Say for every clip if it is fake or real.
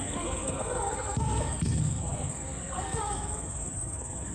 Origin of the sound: fake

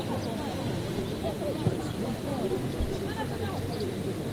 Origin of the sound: real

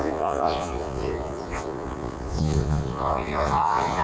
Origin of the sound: fake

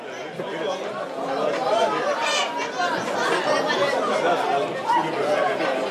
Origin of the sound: real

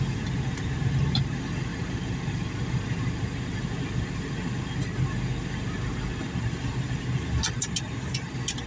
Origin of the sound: real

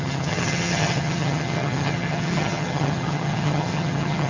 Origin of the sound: fake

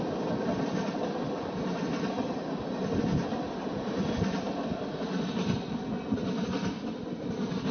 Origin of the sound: real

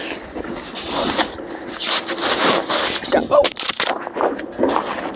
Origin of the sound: real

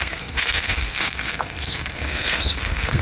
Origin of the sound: fake